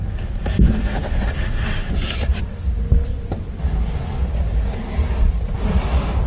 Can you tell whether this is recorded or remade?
recorded